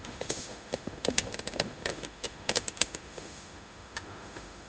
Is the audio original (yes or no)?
no